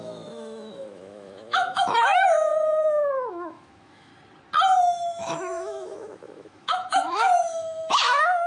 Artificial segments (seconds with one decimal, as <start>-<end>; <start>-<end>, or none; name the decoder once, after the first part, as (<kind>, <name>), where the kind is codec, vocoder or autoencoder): 0.0-2.5 (autoencoder, DAC-VAE); 3.3-4.1; 4.8-8.5